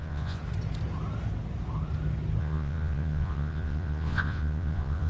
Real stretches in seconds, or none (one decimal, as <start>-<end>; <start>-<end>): 0.4-2.4